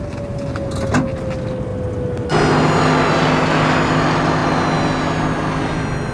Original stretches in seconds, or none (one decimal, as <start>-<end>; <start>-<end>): 0.0-6.1